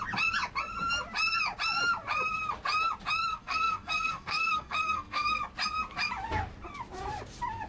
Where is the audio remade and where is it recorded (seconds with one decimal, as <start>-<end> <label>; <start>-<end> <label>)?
0.0-3.3 recorded; 3.3-5.4 remade; 5.4-7.7 recorded